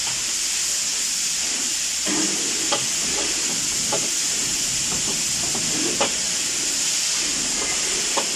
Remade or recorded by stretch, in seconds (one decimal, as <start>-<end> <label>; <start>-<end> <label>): 0.0-0.9 recorded; 0.9-2.5 remade; 2.5-4.4 recorded; 4.4-5.1 remade; 5.1-8.4 recorded